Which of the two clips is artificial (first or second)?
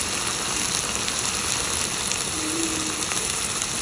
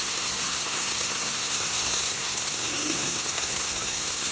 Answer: second